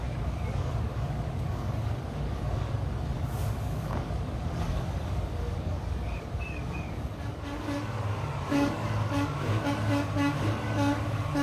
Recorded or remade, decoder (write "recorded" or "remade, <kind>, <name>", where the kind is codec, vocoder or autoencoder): remade, codec, DAC